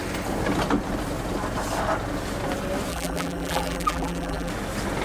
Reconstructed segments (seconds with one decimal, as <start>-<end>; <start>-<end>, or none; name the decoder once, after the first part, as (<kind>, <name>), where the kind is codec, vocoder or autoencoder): 2.9-4.5 (vocoder, BigVGAN v2)

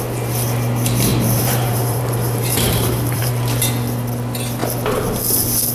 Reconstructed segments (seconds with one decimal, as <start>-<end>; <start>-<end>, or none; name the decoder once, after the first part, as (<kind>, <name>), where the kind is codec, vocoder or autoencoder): 1.1-3.3 (vocoder, BigVGAN v2)

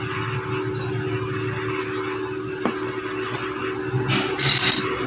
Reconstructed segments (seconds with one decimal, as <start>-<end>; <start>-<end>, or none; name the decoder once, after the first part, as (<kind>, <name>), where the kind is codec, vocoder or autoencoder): 3.6-5.1 (vocoder, BigVGAN v2)

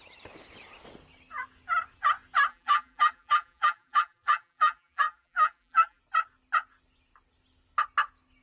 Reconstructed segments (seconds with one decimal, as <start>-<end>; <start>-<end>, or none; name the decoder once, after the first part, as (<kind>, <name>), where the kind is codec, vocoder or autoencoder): 2.5-6.0 (vocoder, BigVGAN v2)

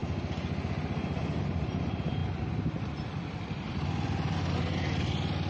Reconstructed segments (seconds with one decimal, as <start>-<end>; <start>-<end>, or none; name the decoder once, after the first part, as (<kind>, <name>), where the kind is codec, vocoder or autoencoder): 1.7-2.2 (vocoder, BigVGAN v2)

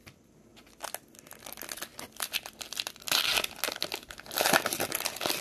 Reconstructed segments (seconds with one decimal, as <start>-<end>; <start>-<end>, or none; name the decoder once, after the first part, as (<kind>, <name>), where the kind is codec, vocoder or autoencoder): 1.9-2.9 (vocoder, BigVGAN v2)

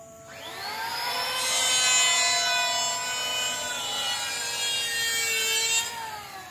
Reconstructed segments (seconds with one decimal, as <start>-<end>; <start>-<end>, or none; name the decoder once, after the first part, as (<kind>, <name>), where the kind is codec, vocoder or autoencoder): 0.9-1.7 (vocoder, BigVGAN v2); 3.3-4.6

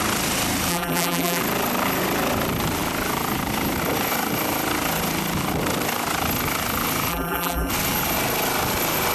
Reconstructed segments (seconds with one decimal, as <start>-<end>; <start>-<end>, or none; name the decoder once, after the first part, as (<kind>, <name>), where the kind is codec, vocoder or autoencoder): 0.7-1.4 (vocoder, BigVGAN v2); 7.1-7.7